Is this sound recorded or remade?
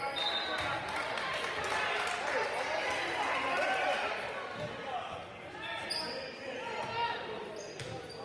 recorded